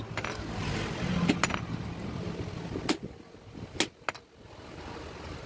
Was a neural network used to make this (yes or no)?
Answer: no